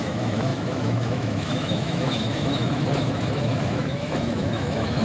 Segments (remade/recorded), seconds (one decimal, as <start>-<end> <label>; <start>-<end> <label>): 0.0-5.0 remade